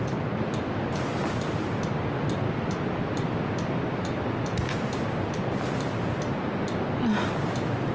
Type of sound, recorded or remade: recorded